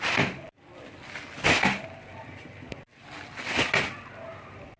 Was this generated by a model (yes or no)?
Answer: no